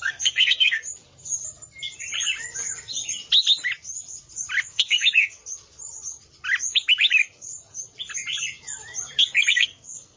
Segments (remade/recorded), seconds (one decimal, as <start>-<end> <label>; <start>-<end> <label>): 0.0-0.8 remade; 0.8-4.6 recorded; 4.6-5.4 remade; 5.4-9.5 recorded; 9.5-10.2 remade